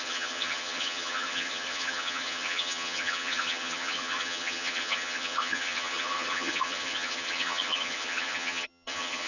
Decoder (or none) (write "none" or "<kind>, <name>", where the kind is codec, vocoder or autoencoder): vocoder, HiFi-GAN